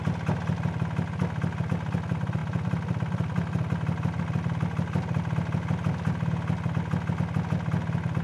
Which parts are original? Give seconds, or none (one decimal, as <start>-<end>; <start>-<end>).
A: 0.0-8.2